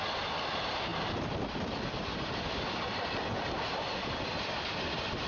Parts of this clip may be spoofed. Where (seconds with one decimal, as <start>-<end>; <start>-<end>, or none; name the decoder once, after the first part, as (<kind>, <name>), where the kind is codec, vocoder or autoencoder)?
0.0-0.9 (vocoder, BigVGAN v2); 4.1-5.3